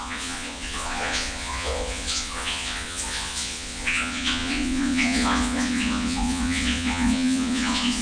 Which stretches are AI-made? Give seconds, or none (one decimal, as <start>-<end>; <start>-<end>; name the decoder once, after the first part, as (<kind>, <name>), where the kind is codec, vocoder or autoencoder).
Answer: 0.0-8.0 (vocoder, Vocos)